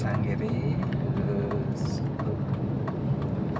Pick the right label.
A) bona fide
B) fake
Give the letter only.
A